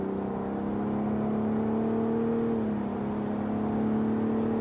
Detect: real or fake real